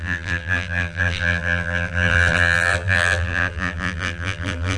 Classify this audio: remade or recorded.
remade